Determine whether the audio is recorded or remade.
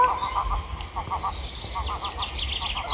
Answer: recorded